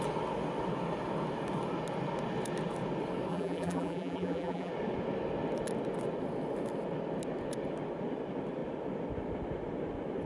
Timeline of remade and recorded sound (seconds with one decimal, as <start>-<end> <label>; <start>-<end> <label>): 0.0-3.3 recorded; 3.3-4.7 remade; 4.7-10.3 recorded

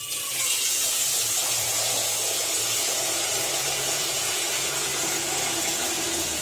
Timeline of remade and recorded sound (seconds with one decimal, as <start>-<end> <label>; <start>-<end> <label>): 0.0-6.4 remade

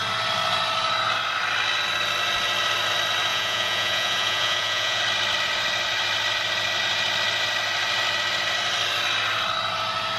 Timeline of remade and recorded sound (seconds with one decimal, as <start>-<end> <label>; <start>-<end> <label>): 0.0-3.3 recorded; 3.3-5.0 remade; 5.0-10.2 recorded

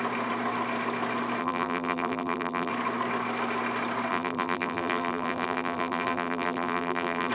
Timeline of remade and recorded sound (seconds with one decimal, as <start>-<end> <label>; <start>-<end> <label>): 0.0-1.4 recorded; 1.4-2.7 remade; 2.7-4.1 recorded; 4.1-7.3 remade

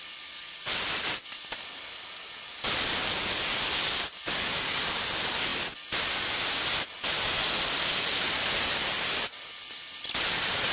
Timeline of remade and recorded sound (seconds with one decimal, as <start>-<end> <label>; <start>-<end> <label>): 0.0-10.7 recorded

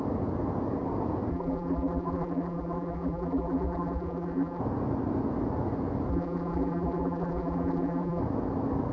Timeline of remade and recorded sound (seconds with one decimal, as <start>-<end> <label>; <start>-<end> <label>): 0.0-1.3 recorded; 1.3-4.6 remade; 4.6-6.1 recorded; 6.1-8.2 remade; 8.2-8.9 recorded

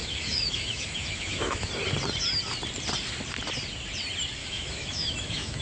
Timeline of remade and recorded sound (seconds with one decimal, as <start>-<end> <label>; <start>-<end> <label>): 0.0-1.7 remade; 1.7-4.4 recorded; 4.4-5.6 remade